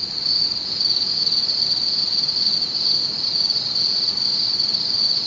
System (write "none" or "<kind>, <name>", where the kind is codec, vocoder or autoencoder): none